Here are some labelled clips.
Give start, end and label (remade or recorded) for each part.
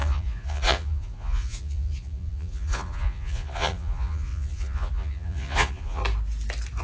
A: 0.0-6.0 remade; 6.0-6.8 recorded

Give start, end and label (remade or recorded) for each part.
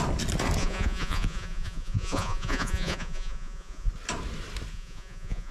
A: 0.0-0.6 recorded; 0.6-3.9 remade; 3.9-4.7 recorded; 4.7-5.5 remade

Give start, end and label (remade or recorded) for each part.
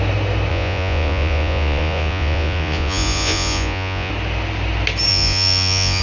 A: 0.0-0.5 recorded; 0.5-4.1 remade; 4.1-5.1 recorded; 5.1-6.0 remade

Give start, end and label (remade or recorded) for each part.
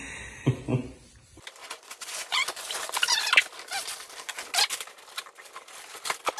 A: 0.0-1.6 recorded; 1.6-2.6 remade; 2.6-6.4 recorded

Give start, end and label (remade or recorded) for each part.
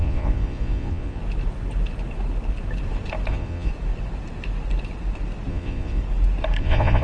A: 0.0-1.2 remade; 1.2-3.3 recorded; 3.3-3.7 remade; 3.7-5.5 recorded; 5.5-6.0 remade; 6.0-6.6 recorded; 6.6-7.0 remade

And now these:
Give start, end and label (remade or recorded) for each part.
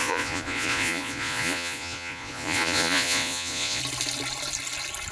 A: 0.0-3.8 remade; 3.8-5.1 recorded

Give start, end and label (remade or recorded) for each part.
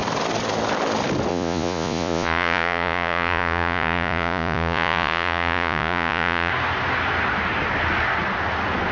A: 0.0-1.3 recorded; 1.3-6.5 remade; 6.5-8.9 recorded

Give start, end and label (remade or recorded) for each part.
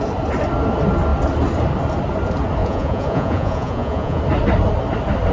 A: 0.0-2.6 recorded; 2.6-4.2 remade; 4.2-5.3 recorded